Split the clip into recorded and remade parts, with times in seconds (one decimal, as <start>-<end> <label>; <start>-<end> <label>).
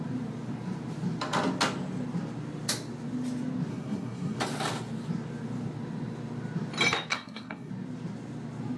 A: 0.0-3.7 recorded; 3.7-4.4 remade; 4.4-7.1 recorded; 7.1-7.7 remade; 7.7-8.8 recorded